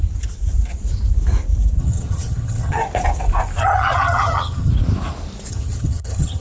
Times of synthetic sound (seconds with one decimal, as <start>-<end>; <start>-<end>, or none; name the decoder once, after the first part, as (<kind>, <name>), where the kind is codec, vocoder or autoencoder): 1.8-2.8 (vocoder, HiFi-GAN); 3.6-4.7; 5.5-6.4